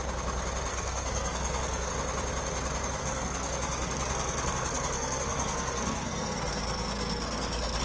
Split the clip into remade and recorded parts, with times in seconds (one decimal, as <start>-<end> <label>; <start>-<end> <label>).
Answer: 0.0-0.7 recorded; 0.7-1.9 remade; 1.9-3.0 recorded; 3.0-7.8 remade